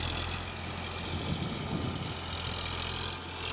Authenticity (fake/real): real